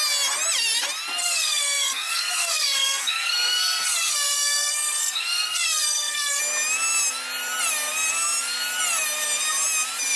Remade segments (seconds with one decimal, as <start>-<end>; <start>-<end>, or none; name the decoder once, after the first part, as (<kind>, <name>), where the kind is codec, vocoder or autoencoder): 1.2-6.4 (codec, SNAC)